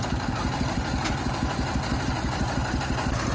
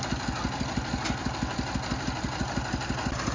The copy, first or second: first